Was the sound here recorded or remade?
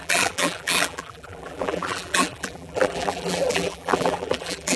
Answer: remade